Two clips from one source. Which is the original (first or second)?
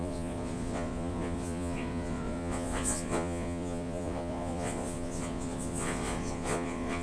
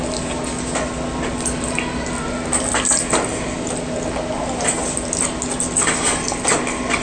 second